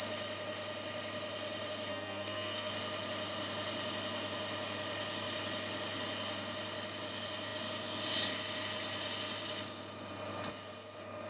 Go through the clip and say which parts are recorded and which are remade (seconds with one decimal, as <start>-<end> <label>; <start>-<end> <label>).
0.0-1.9 recorded; 1.9-2.7 remade; 2.7-11.3 recorded